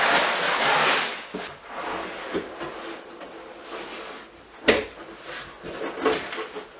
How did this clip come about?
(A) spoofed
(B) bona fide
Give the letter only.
B